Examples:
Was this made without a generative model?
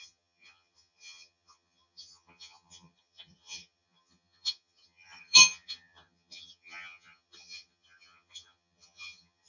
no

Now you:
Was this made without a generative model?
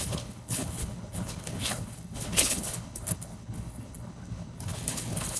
no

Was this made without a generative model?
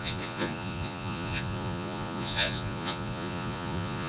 no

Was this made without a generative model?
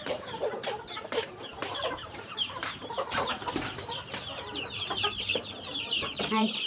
no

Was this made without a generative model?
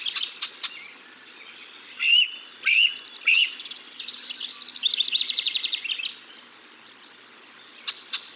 yes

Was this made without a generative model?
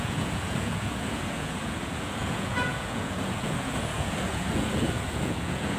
no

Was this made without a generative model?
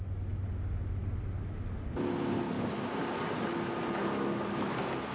yes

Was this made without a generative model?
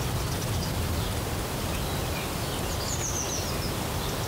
yes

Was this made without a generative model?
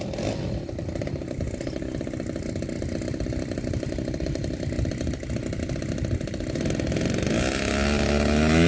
yes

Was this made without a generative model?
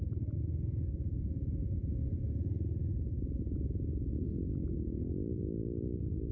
yes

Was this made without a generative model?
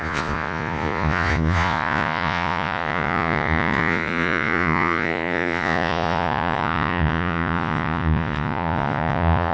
no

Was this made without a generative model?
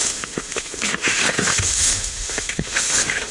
no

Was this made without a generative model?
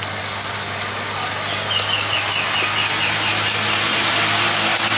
yes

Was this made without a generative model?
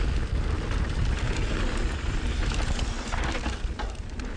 yes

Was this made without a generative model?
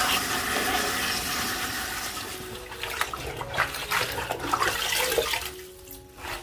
yes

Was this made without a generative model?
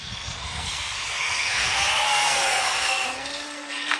no